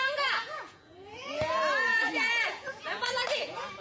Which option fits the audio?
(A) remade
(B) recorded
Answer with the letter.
A